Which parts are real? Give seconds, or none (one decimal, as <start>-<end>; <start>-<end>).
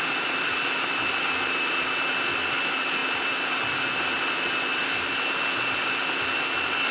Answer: 0.0-6.9